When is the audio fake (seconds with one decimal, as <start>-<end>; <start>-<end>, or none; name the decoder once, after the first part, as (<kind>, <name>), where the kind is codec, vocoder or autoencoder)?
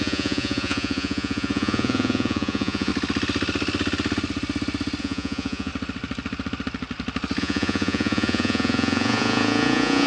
0.0-2.9 (vocoder, Vocos); 5.0-5.7; 7.4-10.1